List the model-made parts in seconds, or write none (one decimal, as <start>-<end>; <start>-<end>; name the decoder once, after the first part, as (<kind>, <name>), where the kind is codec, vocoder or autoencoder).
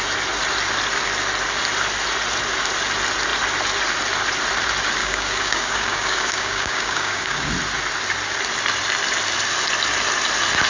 5.0-7.5 (codec, DAC)